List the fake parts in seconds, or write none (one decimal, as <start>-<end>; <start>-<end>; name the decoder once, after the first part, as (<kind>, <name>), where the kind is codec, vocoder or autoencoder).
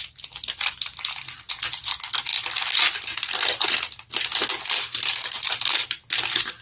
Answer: none